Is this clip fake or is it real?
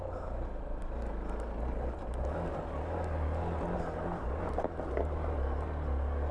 real